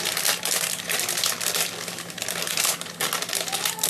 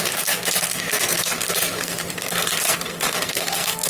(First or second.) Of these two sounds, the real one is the first